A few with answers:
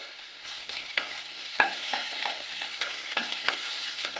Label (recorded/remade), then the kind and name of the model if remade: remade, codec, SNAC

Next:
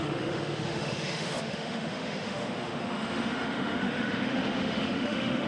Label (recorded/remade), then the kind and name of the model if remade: remade, autoencoder, DAC-VAE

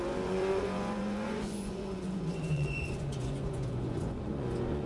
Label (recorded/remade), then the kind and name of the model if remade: remade, vocoder, Vocos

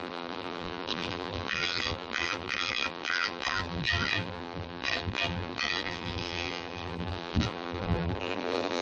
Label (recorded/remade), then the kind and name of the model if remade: remade, vocoder, BigVGAN v2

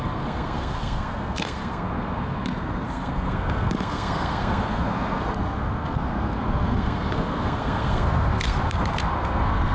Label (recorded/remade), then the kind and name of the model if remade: remade, codec, SNAC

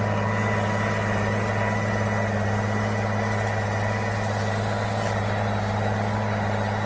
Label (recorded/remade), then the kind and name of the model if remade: recorded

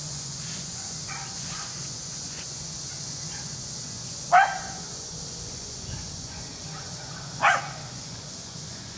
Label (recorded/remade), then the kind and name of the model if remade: remade, vocoder, Vocos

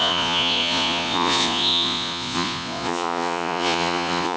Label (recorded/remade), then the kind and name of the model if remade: remade, vocoder, Vocos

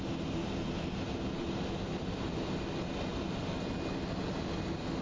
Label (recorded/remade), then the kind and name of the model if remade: recorded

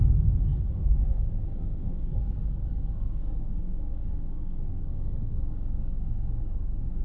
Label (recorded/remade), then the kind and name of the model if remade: remade, codec, SNAC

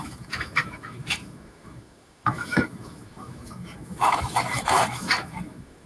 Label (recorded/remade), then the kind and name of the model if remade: remade, autoencoder, DAC-VAE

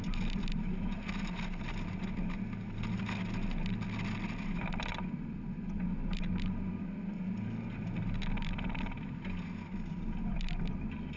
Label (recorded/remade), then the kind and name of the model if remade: recorded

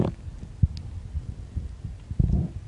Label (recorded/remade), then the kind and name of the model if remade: recorded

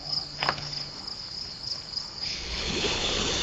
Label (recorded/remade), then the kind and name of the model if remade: remade, codec, HILCodec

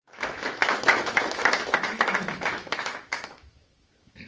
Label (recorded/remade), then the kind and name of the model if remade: remade, autoencoder, DAC-VAE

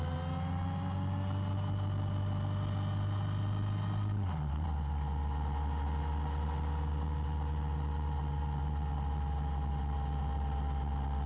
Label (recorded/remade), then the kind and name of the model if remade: recorded